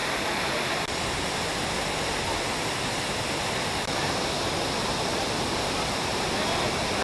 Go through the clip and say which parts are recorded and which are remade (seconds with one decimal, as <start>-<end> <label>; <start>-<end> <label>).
0.0-7.0 recorded